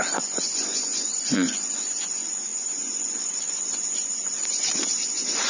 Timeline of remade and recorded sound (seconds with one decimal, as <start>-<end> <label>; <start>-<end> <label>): 0.0-5.5 remade